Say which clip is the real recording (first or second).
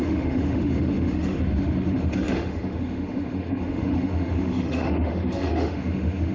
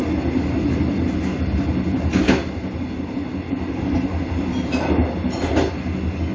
second